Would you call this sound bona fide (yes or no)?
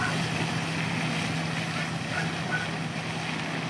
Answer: yes